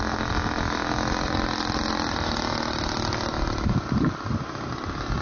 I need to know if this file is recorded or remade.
recorded